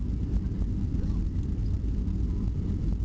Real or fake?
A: real